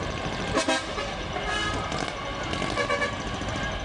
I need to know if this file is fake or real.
real